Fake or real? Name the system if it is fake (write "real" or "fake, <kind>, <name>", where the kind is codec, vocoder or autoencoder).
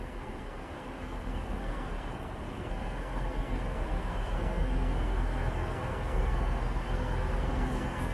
fake, codec, SNAC